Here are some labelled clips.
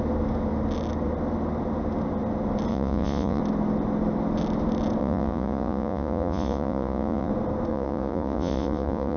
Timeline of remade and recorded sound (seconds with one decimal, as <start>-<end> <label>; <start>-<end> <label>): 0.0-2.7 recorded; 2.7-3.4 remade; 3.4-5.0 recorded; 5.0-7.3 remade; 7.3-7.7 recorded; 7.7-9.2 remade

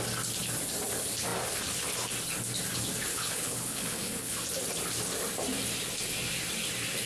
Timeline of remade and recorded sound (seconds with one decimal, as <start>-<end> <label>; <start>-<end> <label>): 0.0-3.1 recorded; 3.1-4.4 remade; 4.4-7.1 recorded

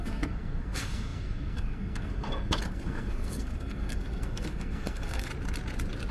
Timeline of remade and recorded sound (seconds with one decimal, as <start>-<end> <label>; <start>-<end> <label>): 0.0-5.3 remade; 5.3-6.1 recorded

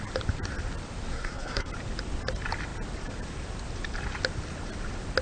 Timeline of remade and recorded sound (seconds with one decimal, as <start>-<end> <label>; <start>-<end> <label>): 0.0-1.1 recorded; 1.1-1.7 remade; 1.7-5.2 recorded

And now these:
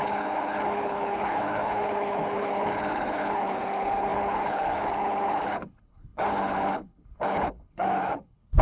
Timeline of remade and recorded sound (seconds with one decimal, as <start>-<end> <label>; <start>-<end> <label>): 0.0-8.6 remade